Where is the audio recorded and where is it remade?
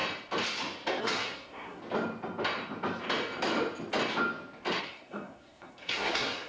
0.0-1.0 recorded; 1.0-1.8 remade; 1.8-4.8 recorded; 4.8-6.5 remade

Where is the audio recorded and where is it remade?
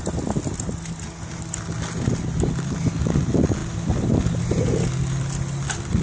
0.0-6.0 recorded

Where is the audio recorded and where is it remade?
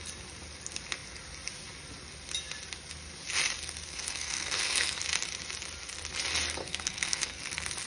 0.0-3.9 recorded; 3.9-5.0 remade; 5.0-6.6 recorded; 6.6-7.4 remade; 7.4-7.9 recorded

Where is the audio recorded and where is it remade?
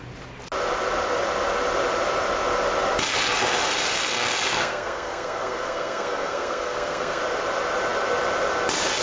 0.0-4.5 recorded; 4.5-7.2 remade; 7.2-9.0 recorded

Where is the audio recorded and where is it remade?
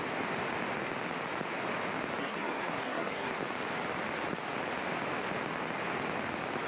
0.0-2.2 recorded; 2.2-3.3 remade; 3.3-6.7 recorded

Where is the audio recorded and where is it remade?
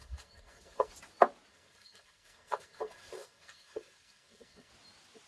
0.0-0.9 remade; 0.9-1.5 recorded; 1.5-4.7 remade; 4.7-5.3 recorded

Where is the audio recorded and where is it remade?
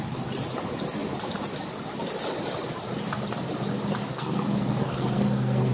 0.0-4.1 recorded; 4.1-5.7 remade